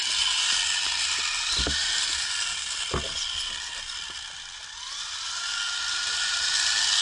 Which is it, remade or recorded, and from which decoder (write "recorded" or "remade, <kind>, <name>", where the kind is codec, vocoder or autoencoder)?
recorded